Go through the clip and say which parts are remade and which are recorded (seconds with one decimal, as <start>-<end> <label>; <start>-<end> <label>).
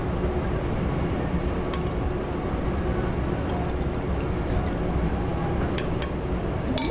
0.0-6.9 recorded